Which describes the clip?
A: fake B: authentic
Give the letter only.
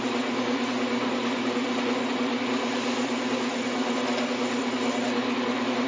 B